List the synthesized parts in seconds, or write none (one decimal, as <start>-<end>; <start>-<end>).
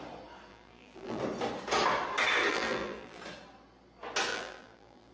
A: 0.5-1.2; 2.5-3.2; 4.3-5.1